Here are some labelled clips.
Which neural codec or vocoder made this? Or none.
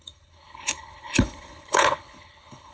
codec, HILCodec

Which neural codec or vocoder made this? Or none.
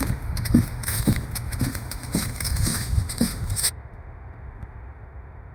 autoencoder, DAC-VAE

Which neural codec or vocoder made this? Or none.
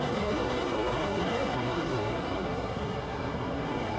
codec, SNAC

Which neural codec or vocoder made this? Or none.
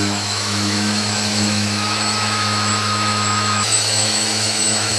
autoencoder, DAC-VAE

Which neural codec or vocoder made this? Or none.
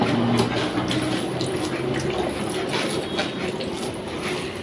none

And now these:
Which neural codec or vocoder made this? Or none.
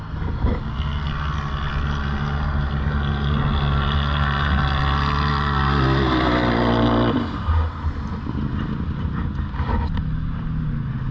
none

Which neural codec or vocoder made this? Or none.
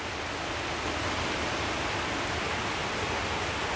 none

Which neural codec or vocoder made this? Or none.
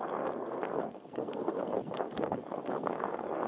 codec, SNAC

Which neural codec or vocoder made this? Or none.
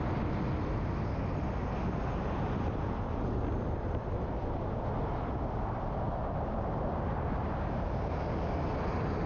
none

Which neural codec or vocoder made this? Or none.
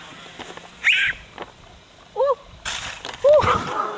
vocoder, BigVGAN v2